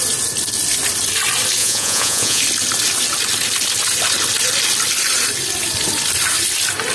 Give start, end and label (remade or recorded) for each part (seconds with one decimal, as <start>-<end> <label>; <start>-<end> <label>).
0.0-1.6 recorded; 1.6-2.4 remade; 2.4-6.9 recorded